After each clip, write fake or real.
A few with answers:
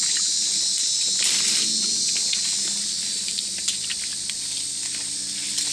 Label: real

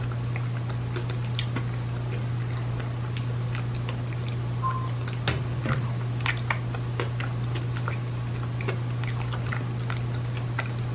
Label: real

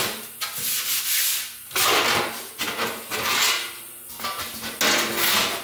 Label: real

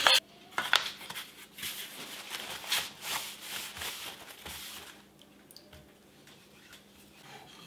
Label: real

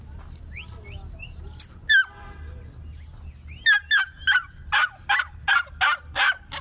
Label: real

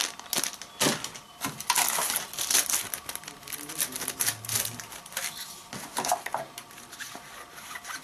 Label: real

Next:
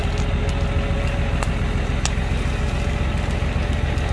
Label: real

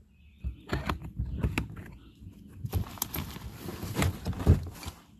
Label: real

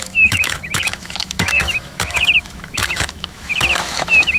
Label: fake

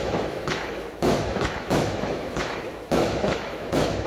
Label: fake